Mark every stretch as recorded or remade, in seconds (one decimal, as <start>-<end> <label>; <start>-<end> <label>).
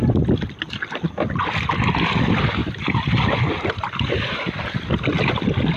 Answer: 0.0-5.8 recorded